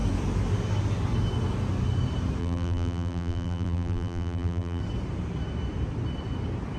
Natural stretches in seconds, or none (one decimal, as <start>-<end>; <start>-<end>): 0.0-2.4; 4.8-6.8